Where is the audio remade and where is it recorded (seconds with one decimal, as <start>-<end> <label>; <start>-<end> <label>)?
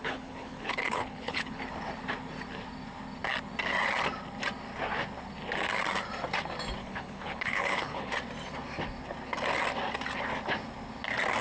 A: 0.0-1.6 remade; 1.6-6.8 recorded; 6.8-8.1 remade; 8.1-11.4 recorded